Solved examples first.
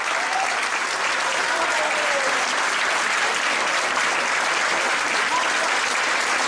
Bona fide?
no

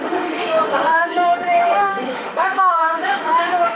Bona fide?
no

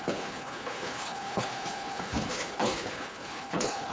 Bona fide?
no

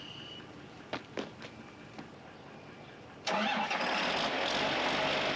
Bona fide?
yes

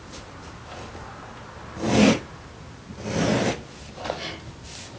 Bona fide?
yes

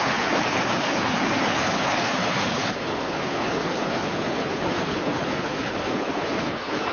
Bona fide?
no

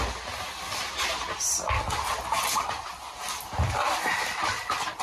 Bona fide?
yes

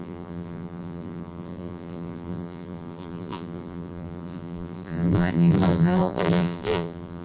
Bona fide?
no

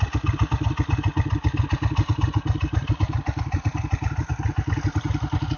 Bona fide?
yes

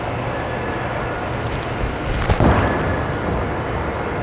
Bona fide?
yes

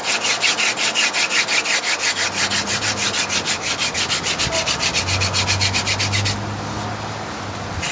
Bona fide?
yes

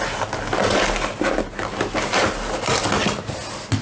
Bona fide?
yes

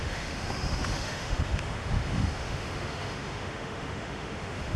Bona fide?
no